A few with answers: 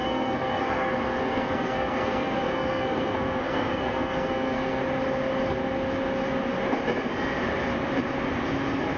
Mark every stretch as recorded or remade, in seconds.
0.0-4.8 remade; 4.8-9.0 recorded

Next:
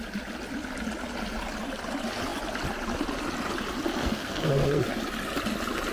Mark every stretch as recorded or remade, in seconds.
0.0-4.0 recorded; 4.0-4.9 remade; 4.9-5.9 recorded

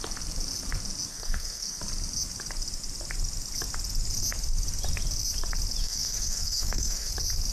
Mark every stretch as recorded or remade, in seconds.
0.0-1.1 recorded; 1.1-1.8 remade; 1.8-5.8 recorded; 5.8-7.1 remade; 7.1-7.5 recorded